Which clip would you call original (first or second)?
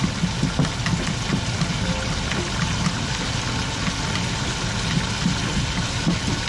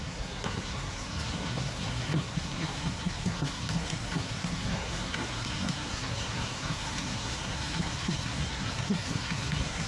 first